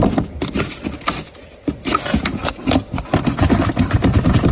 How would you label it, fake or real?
real